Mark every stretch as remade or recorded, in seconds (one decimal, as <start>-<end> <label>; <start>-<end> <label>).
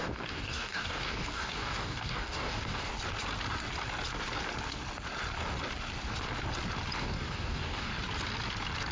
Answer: 0.0-2.9 remade; 2.9-7.0 recorded; 7.0-7.9 remade; 7.9-8.9 recorded